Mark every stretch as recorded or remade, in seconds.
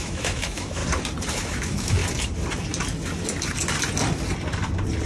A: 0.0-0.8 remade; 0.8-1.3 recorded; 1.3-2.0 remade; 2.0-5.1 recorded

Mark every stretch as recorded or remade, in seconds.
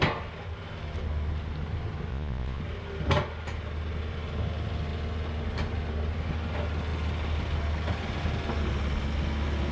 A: 0.0-2.1 recorded; 2.1-2.6 remade; 2.6-9.7 recorded